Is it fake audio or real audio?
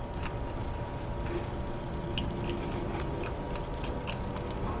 real